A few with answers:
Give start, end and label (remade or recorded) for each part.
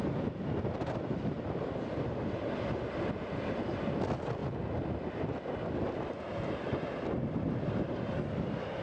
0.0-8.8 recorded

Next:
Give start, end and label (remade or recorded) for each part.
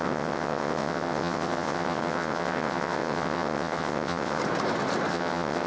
0.0-4.4 remade; 4.4-5.1 recorded; 5.1-5.7 remade